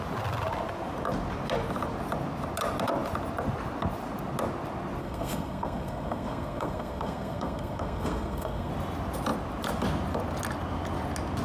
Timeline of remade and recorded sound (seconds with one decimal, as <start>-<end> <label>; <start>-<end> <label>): 0.0-5.0 recorded; 5.0-8.7 remade; 8.7-11.4 recorded